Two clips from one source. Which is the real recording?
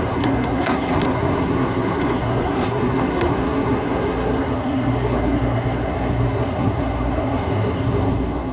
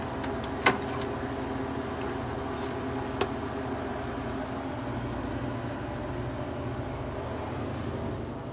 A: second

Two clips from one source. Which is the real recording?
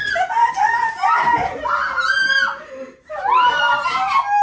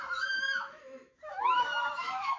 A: first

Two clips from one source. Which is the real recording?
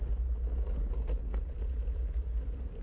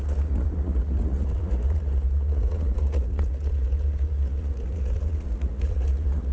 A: first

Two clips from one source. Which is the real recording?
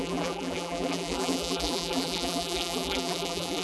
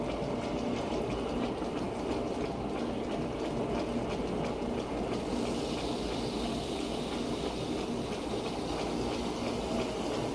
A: second